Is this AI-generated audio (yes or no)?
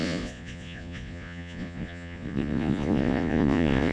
yes